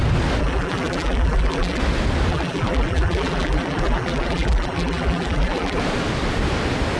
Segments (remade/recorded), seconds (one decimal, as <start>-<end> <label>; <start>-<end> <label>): 0.0-0.4 recorded; 0.4-1.8 remade; 1.8-2.3 recorded; 2.3-5.8 remade; 5.8-7.0 recorded